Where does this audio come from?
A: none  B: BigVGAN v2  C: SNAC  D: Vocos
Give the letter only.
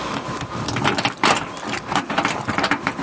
B